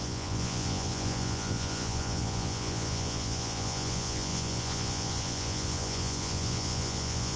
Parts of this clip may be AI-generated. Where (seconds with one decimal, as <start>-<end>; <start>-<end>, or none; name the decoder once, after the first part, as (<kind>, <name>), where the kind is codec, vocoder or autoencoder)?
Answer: 0.0-7.4 (vocoder, Vocos)